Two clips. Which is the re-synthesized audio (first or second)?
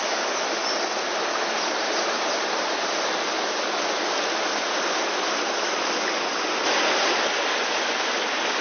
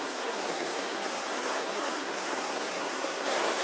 second